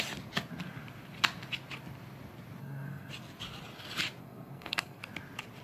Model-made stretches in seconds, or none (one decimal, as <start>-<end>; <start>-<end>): 2.6-3.1; 4.2-5.0